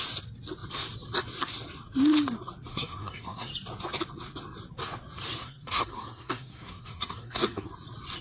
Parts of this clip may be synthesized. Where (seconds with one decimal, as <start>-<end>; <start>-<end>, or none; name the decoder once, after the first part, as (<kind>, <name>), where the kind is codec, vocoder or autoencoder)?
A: 2.7-3.5 (codec, SNAC); 5.4-7.7